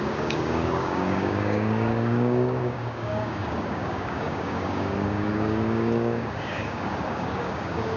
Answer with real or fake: fake